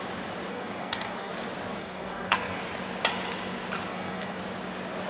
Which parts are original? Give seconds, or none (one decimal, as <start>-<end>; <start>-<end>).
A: 0.0-0.5; 1.3-1.8; 2.6-3.9; 4.4-5.1